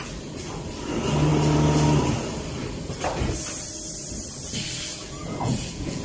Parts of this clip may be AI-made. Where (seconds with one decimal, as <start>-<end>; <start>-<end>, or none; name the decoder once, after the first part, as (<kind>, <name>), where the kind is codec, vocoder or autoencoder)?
5.0-6.0 (vocoder, Vocos)